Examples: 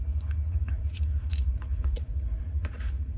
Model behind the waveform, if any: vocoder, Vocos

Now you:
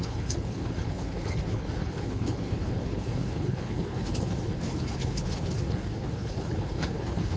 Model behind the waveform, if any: codec, HILCodec